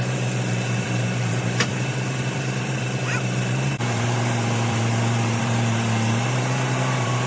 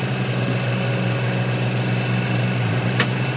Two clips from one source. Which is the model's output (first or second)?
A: first